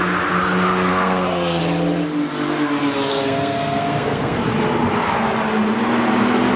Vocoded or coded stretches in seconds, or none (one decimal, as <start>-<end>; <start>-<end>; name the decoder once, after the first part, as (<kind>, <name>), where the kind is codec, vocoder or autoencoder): 0.9-1.6 (codec, SNAC); 3.1-4.4